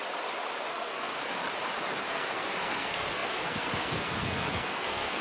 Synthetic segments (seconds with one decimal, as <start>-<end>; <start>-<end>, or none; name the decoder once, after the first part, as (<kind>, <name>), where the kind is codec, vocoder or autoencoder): 0.6-1.4 (codec, SNAC); 2.0-5.2